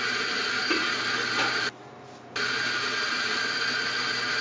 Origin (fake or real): real